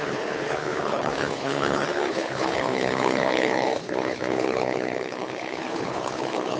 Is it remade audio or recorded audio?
remade